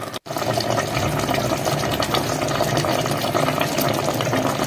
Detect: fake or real real